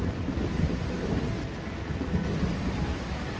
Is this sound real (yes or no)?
yes